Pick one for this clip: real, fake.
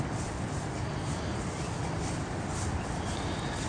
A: real